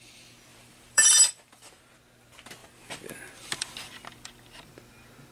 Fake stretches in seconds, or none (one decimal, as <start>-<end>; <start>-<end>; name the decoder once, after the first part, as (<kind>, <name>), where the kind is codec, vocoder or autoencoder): 0.5-1.9 (vocoder, BigVGAN v2); 2.6-4.7